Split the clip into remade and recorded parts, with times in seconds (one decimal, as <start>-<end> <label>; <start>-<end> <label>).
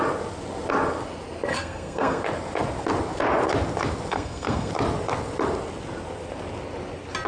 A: 0.0-1.5 recorded; 1.5-2.2 remade; 2.2-4.1 recorded; 4.1-4.7 remade; 4.7-7.3 recorded